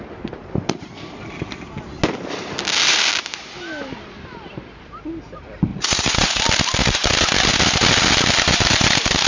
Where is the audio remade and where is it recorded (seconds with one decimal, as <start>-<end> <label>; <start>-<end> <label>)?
0.0-5.7 recorded; 5.7-6.4 remade; 6.4-9.3 recorded